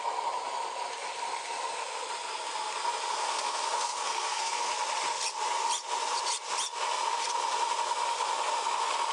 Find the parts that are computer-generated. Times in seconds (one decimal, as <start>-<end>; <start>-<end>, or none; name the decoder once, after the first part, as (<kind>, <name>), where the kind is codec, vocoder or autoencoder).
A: 3.2-4.7 (codec, SNAC)